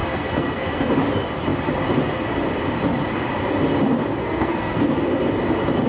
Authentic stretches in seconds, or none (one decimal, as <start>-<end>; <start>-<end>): 0.9-4.2; 4.8-5.9